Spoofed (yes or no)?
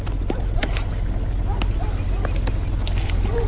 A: no